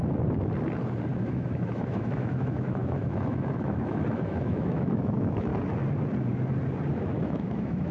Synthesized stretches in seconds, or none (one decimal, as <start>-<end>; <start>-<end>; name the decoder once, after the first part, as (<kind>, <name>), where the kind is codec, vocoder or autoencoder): 1.2-5.5 (autoencoder, DAC-VAE); 6.9-7.9